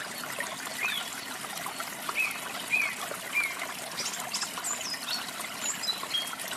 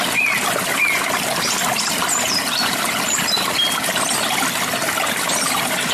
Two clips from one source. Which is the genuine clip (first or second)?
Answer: first